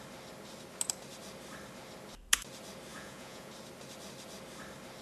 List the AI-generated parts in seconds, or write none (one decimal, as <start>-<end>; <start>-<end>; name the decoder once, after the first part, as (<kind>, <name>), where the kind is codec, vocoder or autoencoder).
2.9-3.5 (vocoder, Vocos)